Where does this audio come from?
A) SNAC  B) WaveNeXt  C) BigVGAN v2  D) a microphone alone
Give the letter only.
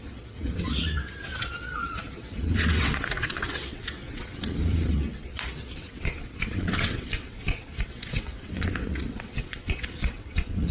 B